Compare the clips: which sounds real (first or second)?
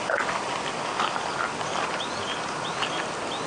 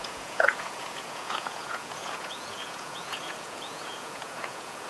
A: first